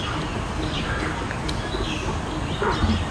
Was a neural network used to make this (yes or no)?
no